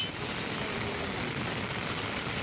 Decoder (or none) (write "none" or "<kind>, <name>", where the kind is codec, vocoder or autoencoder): none